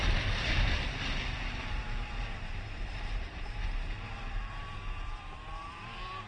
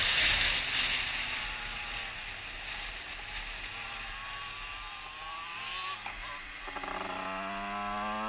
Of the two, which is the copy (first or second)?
first